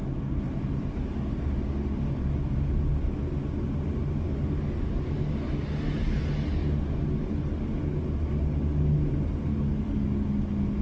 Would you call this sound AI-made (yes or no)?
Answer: no